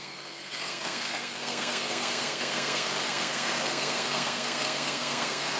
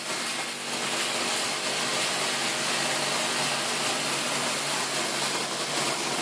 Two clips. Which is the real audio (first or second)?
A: second